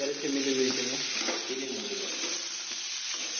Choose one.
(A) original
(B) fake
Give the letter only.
A